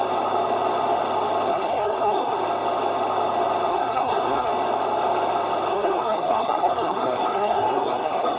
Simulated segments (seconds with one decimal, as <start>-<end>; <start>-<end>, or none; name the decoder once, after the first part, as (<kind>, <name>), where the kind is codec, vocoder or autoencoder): 1.5-2.4 (codec, SNAC); 3.7-4.5; 5.7-8.4